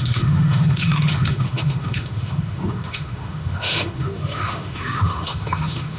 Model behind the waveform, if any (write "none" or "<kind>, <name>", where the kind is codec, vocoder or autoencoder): autoencoder, DAC-VAE